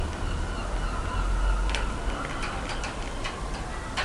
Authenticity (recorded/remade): recorded